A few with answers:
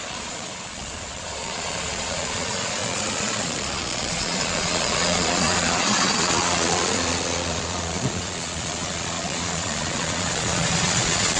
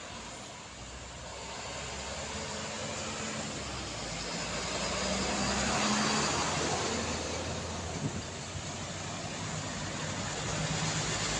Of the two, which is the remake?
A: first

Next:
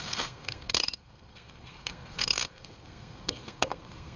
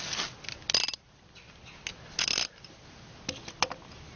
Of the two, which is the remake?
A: first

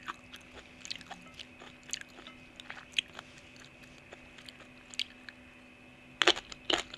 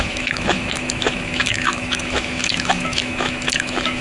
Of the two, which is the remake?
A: second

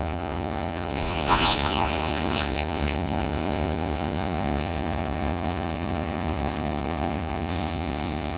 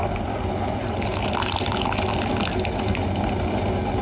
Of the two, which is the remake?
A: first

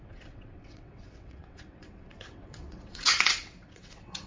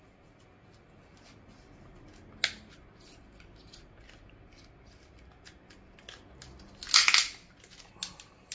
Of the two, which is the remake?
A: first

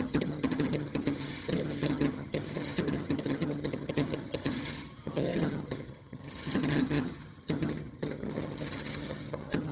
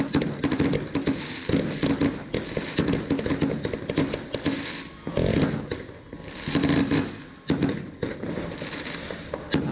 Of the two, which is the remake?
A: first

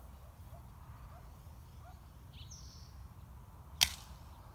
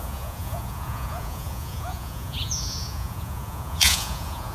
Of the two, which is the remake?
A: second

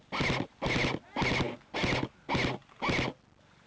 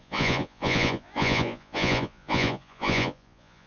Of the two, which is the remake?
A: second